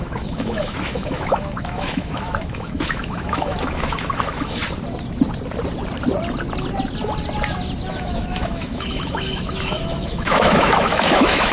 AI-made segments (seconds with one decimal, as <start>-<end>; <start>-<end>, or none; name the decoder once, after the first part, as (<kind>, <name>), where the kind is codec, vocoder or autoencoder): 0.0-4.6 (autoencoder, DAC-VAE); 7.9-11.5